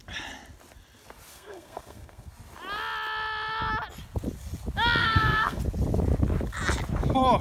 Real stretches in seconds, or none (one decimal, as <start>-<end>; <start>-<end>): 0.0-1.3; 2.3-5.0; 5.6-7.4